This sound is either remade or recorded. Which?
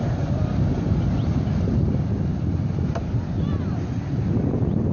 recorded